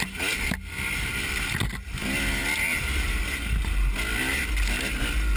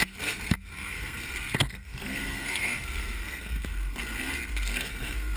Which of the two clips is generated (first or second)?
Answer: second